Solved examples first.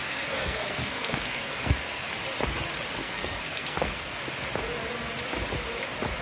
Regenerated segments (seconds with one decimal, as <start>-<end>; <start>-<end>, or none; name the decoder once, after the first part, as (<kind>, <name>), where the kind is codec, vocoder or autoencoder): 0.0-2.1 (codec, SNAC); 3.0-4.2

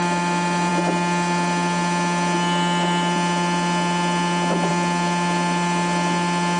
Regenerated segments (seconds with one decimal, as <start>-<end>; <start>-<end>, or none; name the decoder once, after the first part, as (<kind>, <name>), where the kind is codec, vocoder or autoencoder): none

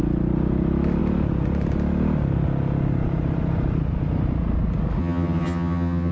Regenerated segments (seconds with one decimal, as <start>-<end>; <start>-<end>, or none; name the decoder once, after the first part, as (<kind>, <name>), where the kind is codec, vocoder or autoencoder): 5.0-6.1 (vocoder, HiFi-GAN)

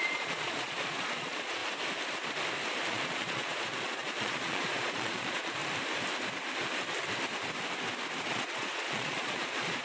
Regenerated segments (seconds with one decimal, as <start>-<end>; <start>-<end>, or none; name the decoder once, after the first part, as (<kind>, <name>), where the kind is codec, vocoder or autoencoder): 0.0-1.6 (vocoder, Vocos); 2.9-5.6; 8.2-9.8

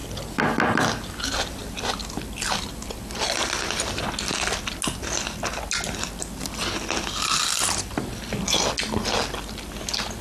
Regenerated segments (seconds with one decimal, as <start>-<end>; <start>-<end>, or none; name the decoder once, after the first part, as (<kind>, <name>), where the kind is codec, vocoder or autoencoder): none

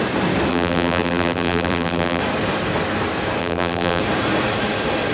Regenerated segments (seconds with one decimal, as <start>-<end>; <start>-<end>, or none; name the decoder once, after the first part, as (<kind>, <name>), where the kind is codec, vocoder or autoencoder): 0.5-2.2 (vocoder, BigVGAN v2); 3.4-4.0

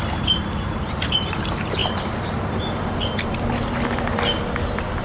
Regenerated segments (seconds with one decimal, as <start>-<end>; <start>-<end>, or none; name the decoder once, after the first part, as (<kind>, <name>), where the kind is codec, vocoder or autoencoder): none

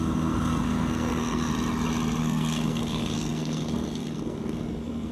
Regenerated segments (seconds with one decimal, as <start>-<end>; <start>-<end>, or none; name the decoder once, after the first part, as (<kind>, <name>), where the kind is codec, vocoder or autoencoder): 0.0-1.5 (codec, SNAC); 2.2-5.1